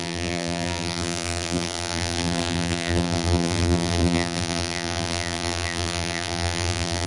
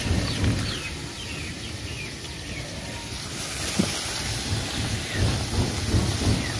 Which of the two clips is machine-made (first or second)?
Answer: first